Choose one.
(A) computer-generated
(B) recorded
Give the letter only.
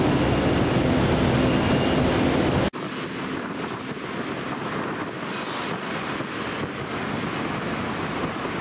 B